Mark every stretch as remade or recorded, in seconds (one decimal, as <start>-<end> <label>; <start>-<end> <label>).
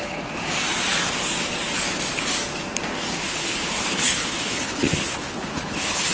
0.0-3.2 recorded; 3.2-6.1 remade